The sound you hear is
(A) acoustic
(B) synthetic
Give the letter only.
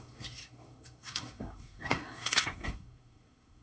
B